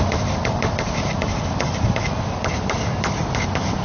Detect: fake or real fake